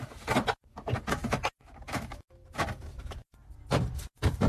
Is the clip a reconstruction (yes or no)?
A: no